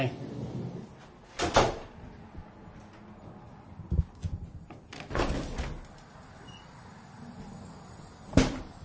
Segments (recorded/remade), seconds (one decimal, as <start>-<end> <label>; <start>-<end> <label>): 0.0-0.9 remade; 0.9-1.5 recorded; 1.5-2.6 remade; 2.6-7.6 recorded; 7.6-8.8 remade